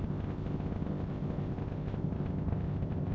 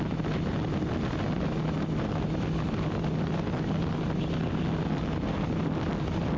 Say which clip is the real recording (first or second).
second